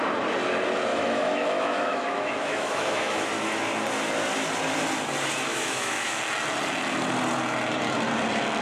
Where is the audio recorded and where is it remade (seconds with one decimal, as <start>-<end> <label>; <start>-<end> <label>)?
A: 0.0-0.9 recorded; 0.9-3.3 remade; 3.3-5.5 recorded; 5.5-6.2 remade; 6.2-8.6 recorded